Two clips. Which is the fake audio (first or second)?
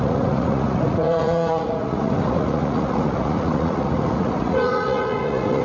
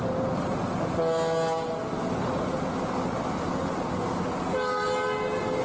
first